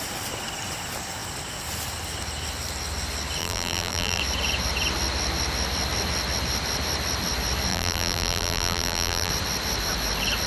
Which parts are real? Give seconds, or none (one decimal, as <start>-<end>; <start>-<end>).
0.0-3.4; 4.2-7.7; 9.3-10.5